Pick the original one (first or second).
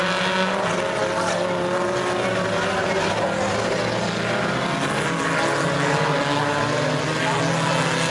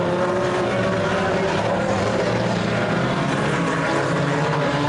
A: first